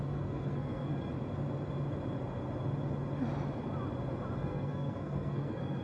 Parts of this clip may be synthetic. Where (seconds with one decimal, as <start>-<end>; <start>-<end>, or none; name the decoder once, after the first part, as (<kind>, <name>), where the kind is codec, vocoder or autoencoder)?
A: 0.0-0.9 (codec, SNAC); 4.4-5.8